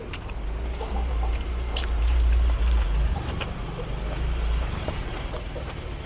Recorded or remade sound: remade